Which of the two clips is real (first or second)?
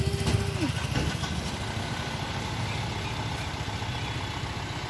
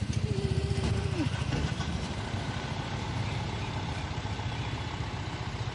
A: first